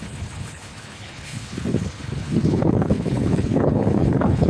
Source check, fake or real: fake